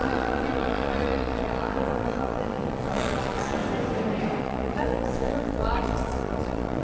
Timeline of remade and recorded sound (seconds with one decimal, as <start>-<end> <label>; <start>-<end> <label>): 0.0-3.6 remade; 3.6-4.4 recorded; 4.4-6.8 remade